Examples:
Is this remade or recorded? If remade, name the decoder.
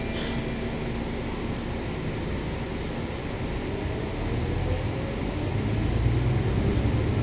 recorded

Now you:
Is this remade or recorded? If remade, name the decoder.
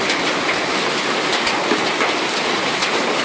recorded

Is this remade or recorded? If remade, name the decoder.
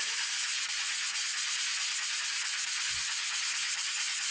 recorded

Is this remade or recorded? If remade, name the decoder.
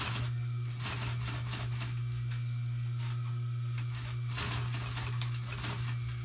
recorded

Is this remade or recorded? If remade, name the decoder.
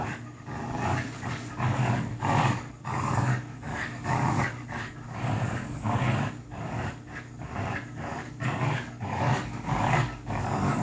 remade, codec, DAC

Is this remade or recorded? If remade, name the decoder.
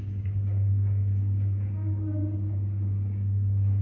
remade, codec, DAC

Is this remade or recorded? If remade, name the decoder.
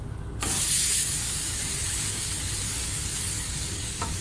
remade, codec, DAC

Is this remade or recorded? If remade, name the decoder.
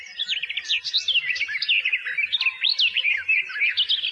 recorded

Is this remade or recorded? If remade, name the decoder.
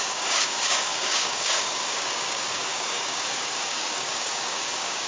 remade, codec, DAC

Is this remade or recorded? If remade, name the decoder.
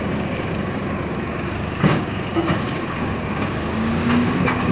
remade, codec, DAC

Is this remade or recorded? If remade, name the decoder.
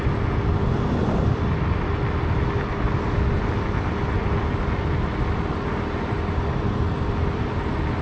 recorded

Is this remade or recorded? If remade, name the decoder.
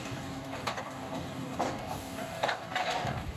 remade, codec, DAC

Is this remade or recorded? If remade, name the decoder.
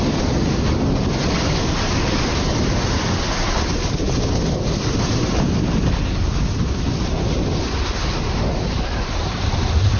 recorded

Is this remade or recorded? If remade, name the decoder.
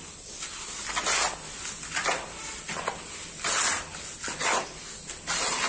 recorded